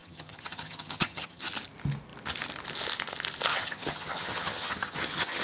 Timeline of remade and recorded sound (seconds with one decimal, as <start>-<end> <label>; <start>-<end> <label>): 0.0-1.5 remade; 1.5-3.5 recorded; 3.5-5.4 remade